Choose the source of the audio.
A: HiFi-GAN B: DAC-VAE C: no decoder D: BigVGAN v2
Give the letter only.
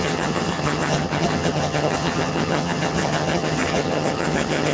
A